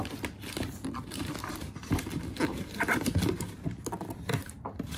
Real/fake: real